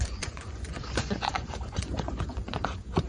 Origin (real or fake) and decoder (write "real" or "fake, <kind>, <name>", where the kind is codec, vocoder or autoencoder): fake, vocoder, Vocos